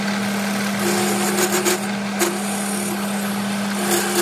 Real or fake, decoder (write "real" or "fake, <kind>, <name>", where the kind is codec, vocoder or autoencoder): real